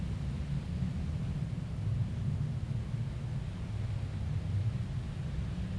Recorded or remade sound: recorded